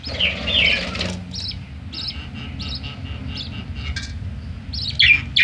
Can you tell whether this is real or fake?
real